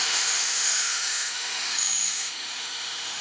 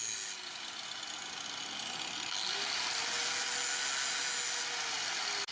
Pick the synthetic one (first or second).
first